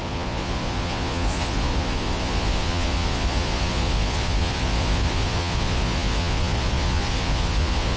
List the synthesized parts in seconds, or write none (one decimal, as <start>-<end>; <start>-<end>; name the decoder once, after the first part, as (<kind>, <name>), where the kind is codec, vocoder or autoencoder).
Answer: 0.0-8.0 (vocoder, Vocos)